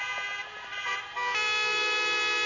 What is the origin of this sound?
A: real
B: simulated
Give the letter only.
A